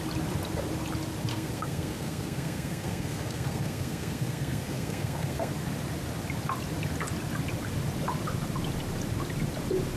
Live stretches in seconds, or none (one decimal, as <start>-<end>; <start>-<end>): 0.0-1.3; 5.5-10.0